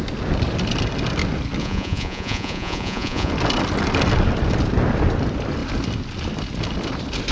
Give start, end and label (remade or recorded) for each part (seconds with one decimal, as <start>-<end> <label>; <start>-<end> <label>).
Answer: 0.0-1.6 recorded; 1.6-3.3 remade; 3.3-7.3 recorded